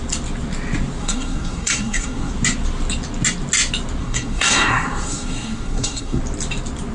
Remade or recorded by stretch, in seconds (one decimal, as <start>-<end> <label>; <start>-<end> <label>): 0.0-1.0 recorded; 1.0-2.3 remade; 2.3-4.0 recorded; 4.0-6.2 remade; 6.2-6.9 recorded